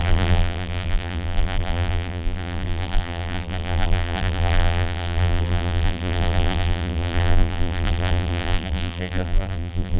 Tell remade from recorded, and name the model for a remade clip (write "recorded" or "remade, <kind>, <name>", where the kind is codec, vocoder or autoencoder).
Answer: remade, vocoder, BigVGAN v2